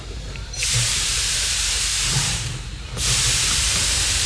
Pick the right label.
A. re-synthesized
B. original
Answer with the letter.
A